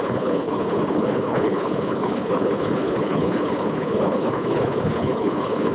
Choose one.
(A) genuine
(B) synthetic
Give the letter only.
B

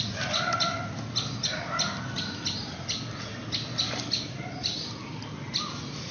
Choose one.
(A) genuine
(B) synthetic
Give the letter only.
A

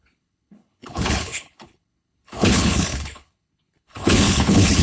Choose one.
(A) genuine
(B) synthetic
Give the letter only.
B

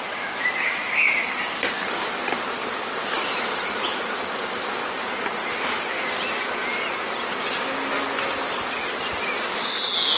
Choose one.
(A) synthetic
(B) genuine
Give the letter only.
B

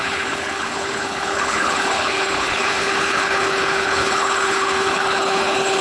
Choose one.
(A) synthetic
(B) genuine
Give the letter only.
A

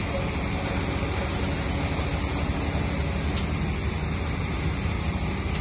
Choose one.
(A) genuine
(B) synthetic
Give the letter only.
A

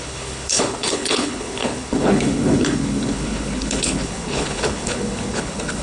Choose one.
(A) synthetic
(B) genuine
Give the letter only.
A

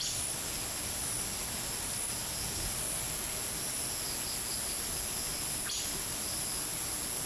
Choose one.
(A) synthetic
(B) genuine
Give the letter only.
B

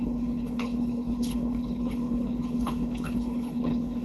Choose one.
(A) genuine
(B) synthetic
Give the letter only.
B